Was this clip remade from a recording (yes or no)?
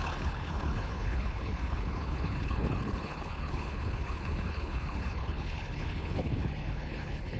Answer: yes